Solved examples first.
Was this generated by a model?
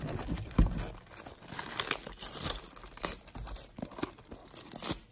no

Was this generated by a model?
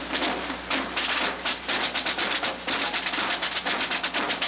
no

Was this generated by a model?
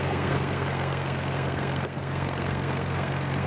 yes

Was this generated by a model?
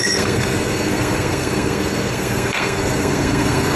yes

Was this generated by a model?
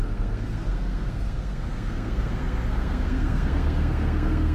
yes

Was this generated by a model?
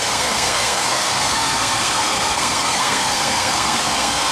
yes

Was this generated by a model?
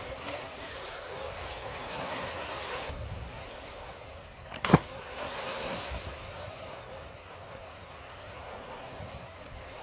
yes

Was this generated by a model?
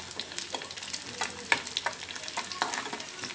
no